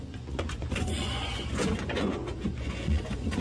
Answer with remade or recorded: remade